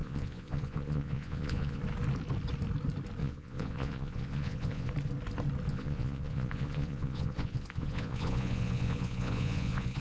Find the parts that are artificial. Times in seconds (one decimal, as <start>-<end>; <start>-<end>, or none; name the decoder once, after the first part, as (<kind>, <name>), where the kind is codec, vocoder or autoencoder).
0.0-1.8 (vocoder, Vocos); 3.2-4.9; 5.7-10.0